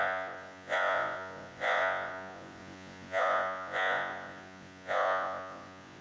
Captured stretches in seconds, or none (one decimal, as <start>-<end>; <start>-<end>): none